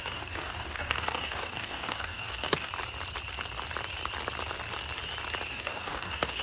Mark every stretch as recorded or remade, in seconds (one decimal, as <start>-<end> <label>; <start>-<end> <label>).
0.0-2.7 remade; 2.7-5.5 recorded; 5.5-6.4 remade